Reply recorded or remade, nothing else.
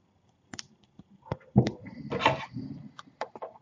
remade